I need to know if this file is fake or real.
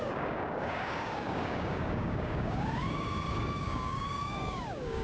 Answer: fake